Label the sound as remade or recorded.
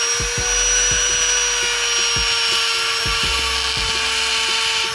recorded